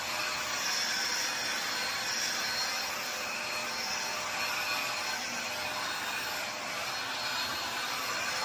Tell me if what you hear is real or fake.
real